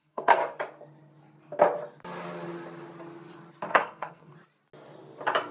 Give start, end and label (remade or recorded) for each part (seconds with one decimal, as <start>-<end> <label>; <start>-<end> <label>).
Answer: 0.0-0.4 remade; 0.4-3.7 recorded; 3.7-4.3 remade; 4.3-5.5 recorded